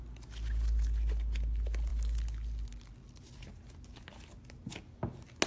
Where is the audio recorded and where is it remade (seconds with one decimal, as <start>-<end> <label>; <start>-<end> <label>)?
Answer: 0.0-5.5 recorded